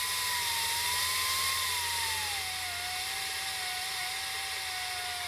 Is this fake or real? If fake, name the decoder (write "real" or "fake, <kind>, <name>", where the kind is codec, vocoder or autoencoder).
real